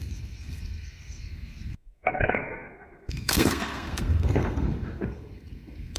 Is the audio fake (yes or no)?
yes